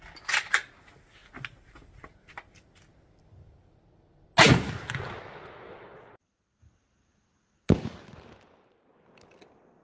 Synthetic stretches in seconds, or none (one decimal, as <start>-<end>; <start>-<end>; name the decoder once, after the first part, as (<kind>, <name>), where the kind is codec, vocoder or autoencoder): none